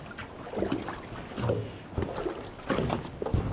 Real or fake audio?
real